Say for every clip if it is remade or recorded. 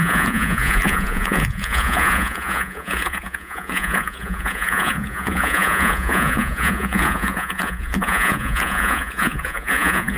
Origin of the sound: remade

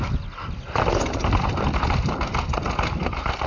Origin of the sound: recorded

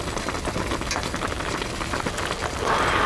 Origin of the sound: recorded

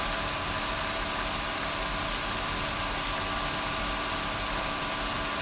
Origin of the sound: remade